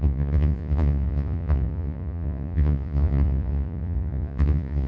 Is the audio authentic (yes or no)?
no